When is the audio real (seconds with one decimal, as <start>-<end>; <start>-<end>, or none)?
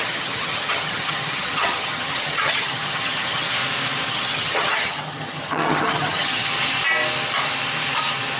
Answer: 3.6-4.1; 6.5-8.4